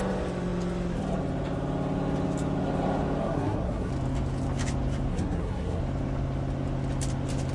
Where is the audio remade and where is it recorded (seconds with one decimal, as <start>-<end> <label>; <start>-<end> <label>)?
0.0-3.2 recorded; 3.2-3.9 remade; 3.9-5.1 recorded; 5.1-5.8 remade; 5.8-7.5 recorded